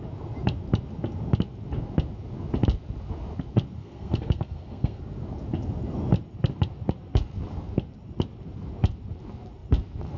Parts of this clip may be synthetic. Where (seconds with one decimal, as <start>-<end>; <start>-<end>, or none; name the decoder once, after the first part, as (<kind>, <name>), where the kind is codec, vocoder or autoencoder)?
3.8-5.0 (codec, SNAC)